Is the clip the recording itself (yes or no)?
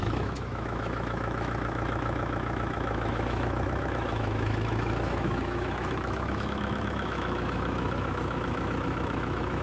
no